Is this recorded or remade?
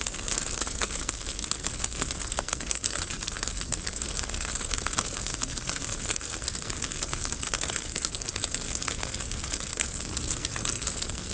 remade